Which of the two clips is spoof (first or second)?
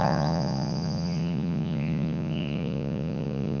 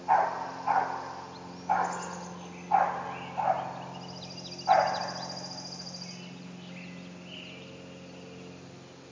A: first